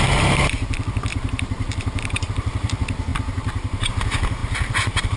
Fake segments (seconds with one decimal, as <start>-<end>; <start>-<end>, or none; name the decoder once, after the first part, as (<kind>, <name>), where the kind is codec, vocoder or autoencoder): 1.1-2.3 (vocoder, BigVGAN v2); 3.1-3.9; 4.4-5.2